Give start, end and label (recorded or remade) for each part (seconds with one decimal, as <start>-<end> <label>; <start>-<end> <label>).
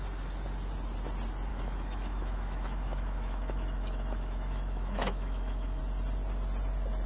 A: 0.0-1.5 recorded; 1.5-5.8 remade; 5.8-7.1 recorded